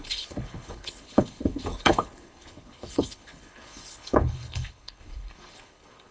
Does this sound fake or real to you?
fake